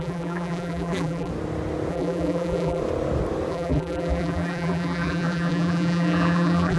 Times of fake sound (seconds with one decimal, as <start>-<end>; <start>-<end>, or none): 0.0-1.3; 1.9-2.8; 3.5-6.8